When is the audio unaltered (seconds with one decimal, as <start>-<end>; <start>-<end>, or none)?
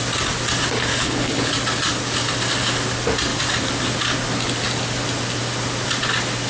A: 0.0-0.9; 1.5-6.5